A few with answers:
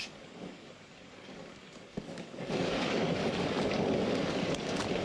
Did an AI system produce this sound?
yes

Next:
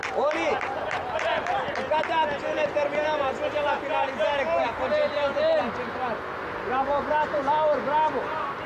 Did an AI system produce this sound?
no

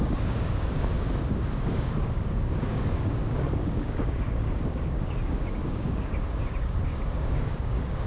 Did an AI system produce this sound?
yes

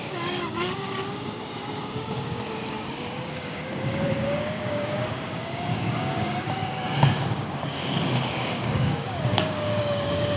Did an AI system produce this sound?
yes